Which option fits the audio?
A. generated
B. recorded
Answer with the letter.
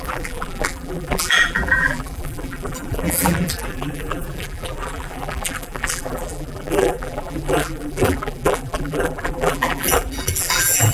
A